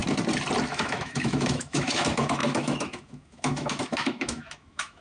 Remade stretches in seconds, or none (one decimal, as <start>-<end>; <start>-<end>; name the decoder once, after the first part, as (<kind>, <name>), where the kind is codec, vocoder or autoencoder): 0.7-5.0 (autoencoder, DAC-VAE)